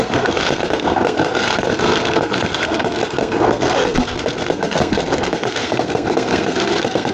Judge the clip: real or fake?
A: fake